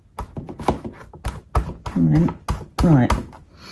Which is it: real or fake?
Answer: real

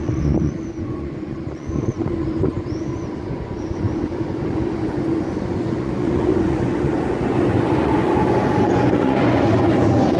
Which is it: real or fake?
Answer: fake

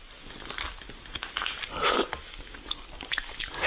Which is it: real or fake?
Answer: real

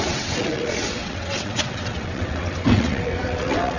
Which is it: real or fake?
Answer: fake